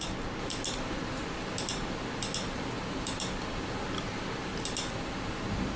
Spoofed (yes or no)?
no